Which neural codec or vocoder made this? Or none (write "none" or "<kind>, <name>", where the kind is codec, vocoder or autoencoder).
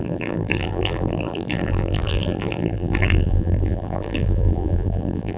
vocoder, BigVGAN v2